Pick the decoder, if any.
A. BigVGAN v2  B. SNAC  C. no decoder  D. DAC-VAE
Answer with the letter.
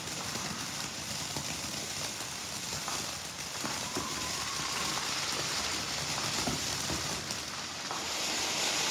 C